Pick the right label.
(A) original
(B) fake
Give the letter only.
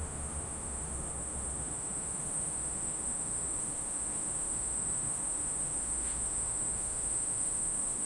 B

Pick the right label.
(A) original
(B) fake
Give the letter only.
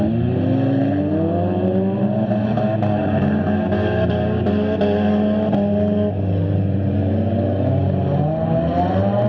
A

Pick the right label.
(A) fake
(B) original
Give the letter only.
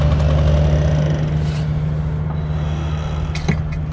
B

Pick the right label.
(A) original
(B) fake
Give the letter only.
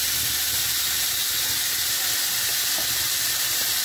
A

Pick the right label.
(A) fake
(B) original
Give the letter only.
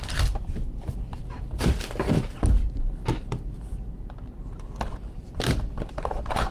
A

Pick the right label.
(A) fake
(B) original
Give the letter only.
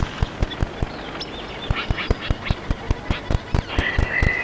B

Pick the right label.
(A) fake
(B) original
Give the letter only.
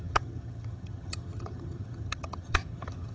A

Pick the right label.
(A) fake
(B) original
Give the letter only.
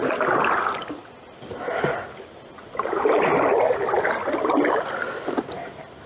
B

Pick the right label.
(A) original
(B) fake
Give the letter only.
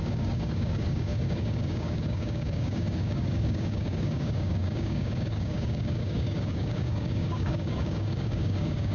B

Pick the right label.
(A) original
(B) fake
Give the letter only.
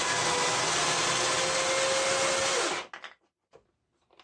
A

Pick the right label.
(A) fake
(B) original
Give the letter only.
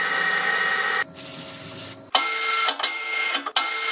B